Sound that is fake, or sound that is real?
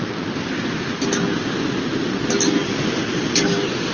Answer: real